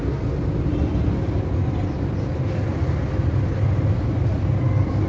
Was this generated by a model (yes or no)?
no